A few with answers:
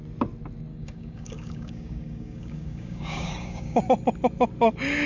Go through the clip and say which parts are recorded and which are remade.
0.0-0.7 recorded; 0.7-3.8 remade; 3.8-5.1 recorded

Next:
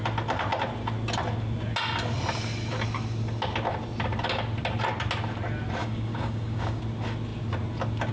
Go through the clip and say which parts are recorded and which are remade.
0.0-5.8 recorded; 5.8-6.8 remade; 6.8-8.1 recorded